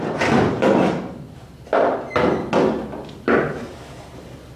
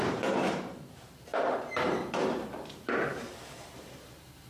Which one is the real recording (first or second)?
first